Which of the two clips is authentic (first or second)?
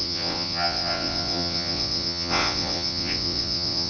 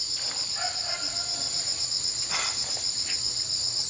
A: second